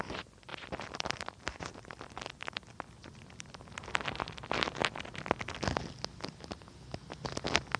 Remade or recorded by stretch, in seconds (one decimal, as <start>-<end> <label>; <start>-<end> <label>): 0.0-4.8 remade; 4.8-7.8 recorded